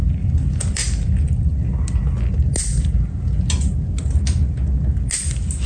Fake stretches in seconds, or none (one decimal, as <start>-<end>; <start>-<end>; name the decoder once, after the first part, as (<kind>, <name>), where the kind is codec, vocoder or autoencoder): 0.0-2.0 (vocoder, BigVGAN v2)